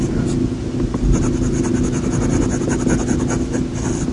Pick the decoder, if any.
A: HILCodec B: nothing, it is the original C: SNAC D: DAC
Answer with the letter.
B